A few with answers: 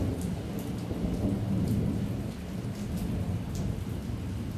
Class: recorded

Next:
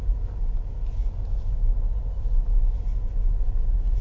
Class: recorded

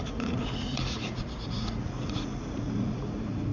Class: remade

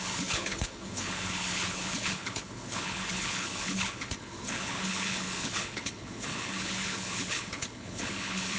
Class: remade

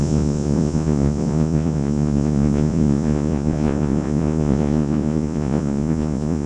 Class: remade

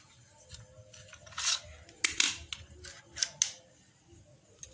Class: recorded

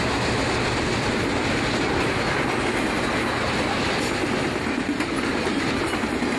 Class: recorded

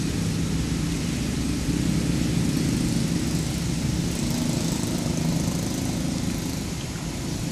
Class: recorded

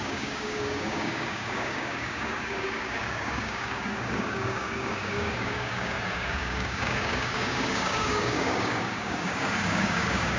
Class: remade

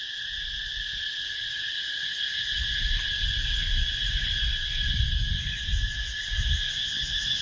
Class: recorded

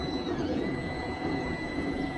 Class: remade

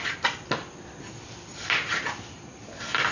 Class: recorded